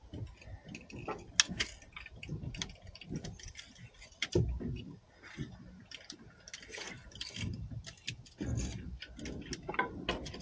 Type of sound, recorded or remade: recorded